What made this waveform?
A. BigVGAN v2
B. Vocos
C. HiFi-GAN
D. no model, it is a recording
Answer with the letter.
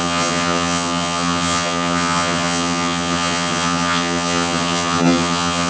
C